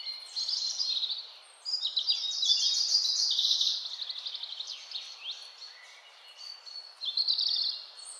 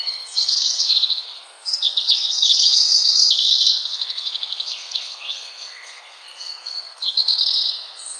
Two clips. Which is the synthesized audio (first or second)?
second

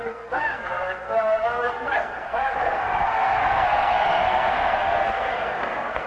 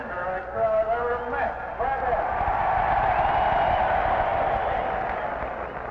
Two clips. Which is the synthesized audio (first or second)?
first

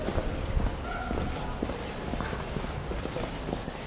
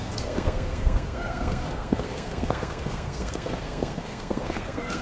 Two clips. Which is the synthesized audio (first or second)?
second